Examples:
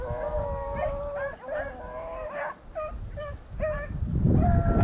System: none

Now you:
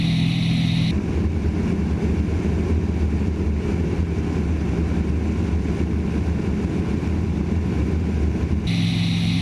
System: none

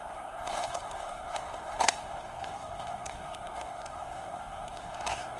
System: codec, SNAC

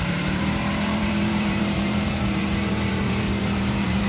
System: vocoder, BigVGAN v2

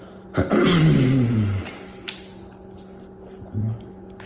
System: none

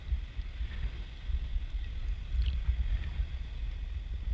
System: none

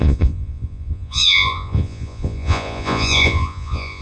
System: vocoder, Vocos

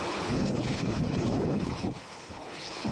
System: codec, HILCodec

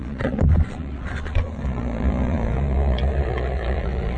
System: vocoder, Vocos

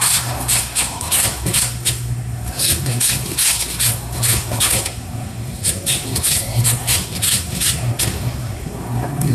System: codec, SNAC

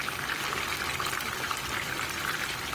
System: none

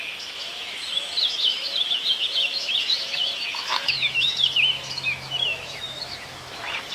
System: autoencoder, DAC-VAE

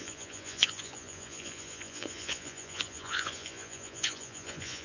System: vocoder, Vocos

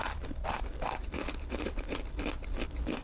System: none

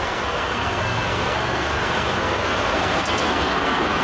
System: codec, SNAC